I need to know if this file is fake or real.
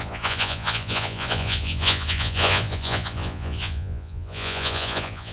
fake